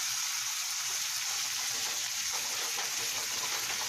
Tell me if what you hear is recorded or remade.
recorded